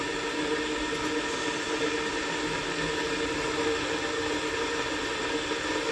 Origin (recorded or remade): recorded